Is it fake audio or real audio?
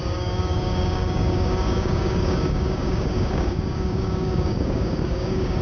fake